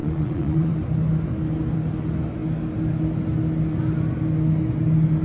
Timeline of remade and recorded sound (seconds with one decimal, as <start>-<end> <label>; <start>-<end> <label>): 0.0-0.7 remade; 0.7-5.2 recorded